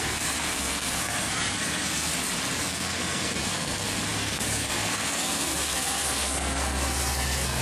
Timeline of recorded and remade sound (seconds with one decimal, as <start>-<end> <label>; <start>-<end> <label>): 0.0-2.1 remade; 2.1-2.6 recorded; 2.6-7.6 remade